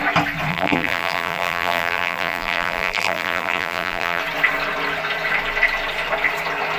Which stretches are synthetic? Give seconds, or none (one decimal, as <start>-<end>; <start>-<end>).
0.5-4.2